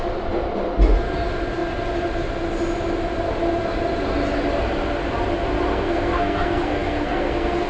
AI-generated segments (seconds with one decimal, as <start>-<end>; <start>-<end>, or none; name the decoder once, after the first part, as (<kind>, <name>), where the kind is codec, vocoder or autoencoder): 5.7-7.7 (codec, SNAC)

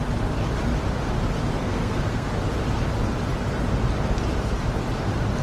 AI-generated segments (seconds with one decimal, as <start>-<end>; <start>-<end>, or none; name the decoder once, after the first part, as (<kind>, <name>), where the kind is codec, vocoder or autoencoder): 1.6-2.3 (codec, SNAC)

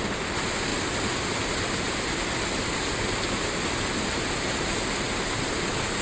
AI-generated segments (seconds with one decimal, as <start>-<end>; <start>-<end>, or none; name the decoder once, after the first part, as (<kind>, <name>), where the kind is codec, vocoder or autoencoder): none

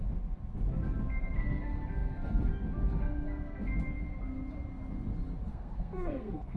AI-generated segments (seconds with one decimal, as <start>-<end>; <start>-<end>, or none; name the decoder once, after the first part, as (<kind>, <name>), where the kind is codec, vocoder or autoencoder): 5.5-6.6 (codec, SNAC)

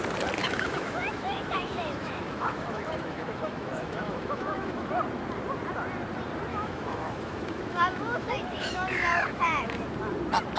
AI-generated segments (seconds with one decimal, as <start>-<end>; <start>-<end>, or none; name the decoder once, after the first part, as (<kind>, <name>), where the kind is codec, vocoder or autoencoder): 0.4-4.9 (autoencoder, DAC-VAE); 6.5-9.8

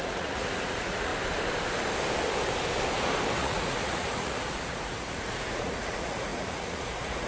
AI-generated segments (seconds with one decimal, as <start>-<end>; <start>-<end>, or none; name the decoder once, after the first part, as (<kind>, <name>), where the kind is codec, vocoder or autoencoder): 0.0-1.1 (vocoder, Vocos); 3.4-7.3

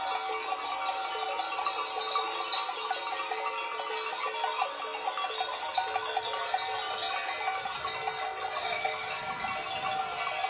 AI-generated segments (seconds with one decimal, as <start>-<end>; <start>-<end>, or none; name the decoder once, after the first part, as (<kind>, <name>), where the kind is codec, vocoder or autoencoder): 8.6-9.3 (codec, DAC)